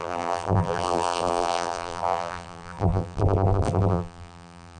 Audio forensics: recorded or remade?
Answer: remade